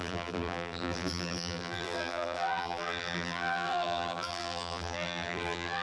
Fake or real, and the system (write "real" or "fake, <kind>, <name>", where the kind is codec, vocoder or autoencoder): fake, vocoder, BigVGAN v2